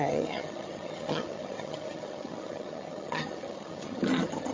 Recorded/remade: remade